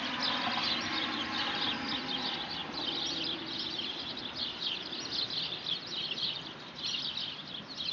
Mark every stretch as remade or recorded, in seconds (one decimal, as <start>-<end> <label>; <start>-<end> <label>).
0.0-7.9 recorded